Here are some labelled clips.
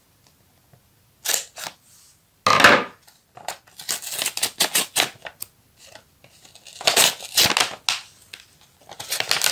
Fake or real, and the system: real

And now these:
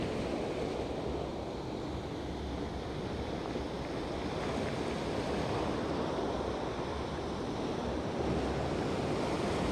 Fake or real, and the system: real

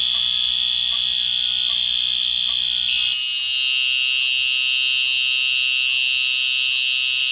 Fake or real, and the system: real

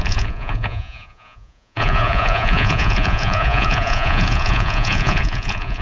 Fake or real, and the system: fake, vocoder, Vocos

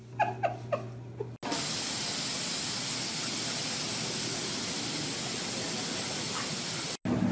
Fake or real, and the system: real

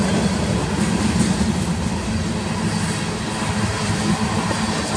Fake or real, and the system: real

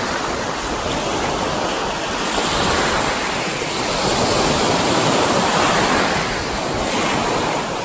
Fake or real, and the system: real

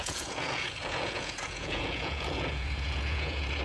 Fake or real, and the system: fake, vocoder, Vocos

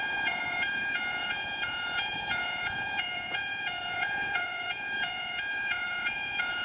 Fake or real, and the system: fake, vocoder, Vocos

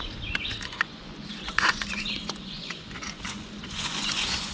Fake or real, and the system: fake, vocoder, Vocos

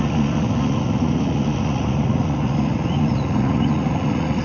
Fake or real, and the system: fake, vocoder, Vocos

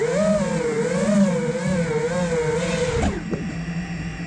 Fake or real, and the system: real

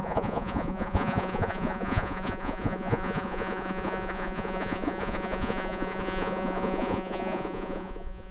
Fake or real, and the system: fake, vocoder, Vocos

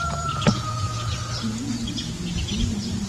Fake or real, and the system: fake, vocoder, Vocos